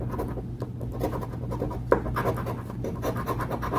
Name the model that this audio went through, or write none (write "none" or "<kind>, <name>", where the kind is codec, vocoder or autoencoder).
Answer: none